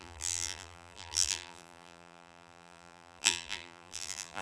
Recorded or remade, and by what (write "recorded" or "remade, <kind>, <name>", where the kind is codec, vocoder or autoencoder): remade, vocoder, BigVGAN v2